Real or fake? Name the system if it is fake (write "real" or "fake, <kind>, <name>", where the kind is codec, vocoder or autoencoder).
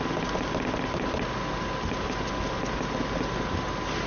real